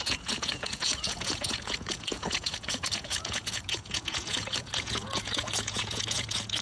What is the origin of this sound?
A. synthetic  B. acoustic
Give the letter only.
A